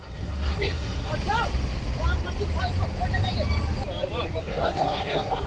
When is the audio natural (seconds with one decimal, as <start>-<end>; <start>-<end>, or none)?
1.1-4.4